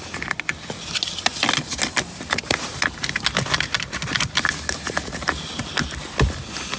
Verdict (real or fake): real